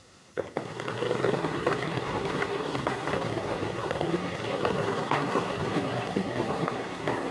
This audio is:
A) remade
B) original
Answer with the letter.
A